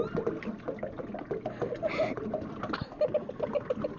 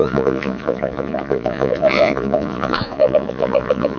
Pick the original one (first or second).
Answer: first